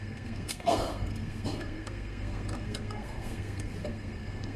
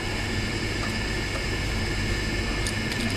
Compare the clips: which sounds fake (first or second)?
first